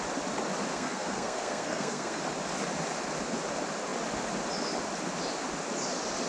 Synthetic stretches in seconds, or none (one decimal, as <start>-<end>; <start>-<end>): 0.7-2.2